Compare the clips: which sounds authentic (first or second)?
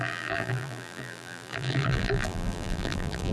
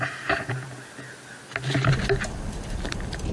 second